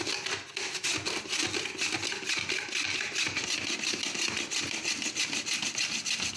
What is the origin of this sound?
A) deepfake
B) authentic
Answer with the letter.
B